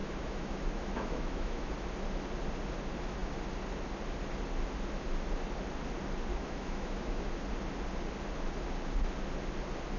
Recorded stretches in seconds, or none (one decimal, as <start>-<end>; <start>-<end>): 1.7-6.3; 7.3-10.0